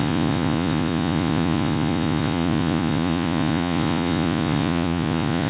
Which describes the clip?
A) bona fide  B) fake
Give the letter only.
B